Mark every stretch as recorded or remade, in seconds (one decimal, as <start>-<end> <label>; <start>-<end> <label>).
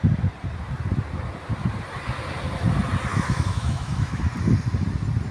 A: 0.0-3.1 recorded; 3.1-4.2 remade; 4.2-5.3 recorded